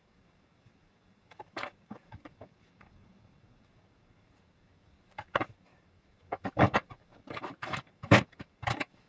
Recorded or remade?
remade